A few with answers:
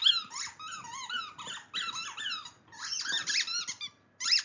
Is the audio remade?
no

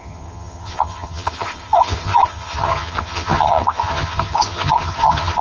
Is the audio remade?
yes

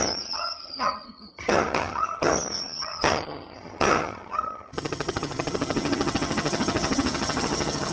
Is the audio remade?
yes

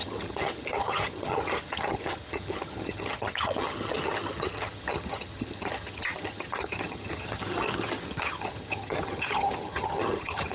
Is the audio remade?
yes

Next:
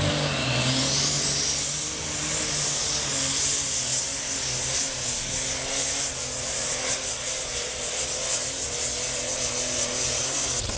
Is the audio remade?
no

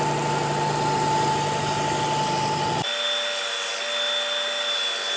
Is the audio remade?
no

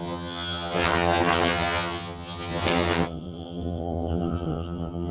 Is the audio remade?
yes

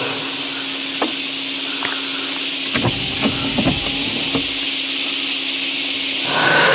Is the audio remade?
no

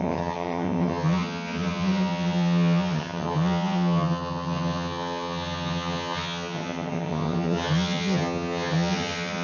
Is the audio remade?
yes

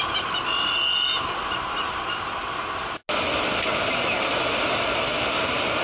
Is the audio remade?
no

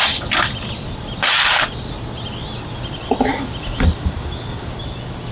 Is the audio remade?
no